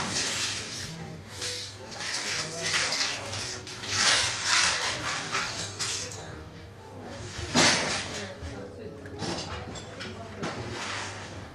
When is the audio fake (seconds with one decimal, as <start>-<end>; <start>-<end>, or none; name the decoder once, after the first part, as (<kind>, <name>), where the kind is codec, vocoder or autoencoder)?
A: 0.0-7.4 (codec, DAC); 7.9-8.5; 10.8-11.5